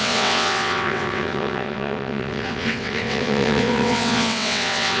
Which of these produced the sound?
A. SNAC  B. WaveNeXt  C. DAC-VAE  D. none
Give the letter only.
B